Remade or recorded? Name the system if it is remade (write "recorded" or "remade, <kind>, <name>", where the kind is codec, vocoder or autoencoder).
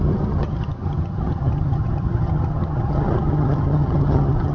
remade, vocoder, HiFi-GAN